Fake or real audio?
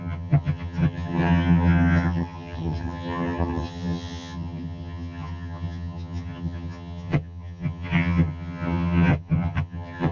fake